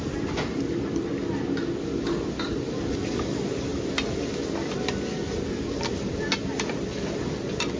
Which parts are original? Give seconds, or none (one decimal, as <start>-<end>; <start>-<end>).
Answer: 0.0-7.8